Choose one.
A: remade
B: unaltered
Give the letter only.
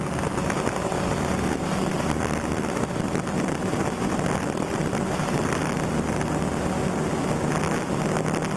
B